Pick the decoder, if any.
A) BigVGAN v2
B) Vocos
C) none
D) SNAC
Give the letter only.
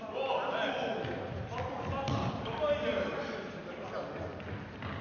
C